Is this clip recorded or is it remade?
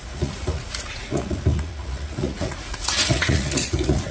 remade